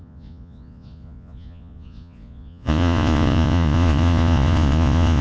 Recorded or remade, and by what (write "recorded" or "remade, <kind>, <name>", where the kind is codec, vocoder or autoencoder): remade, vocoder, Vocos